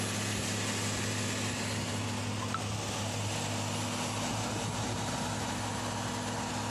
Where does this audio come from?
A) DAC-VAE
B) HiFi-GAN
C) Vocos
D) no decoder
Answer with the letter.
D